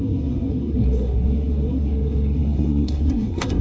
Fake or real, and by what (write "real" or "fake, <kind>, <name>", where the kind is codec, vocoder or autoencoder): fake, codec, SNAC